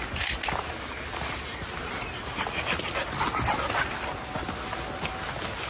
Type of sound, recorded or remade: recorded